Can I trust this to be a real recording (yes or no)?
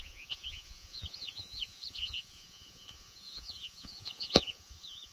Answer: no